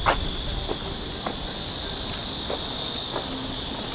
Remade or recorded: recorded